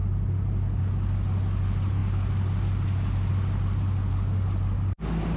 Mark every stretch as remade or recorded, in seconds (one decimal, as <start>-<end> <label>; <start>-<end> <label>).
0.0-5.4 recorded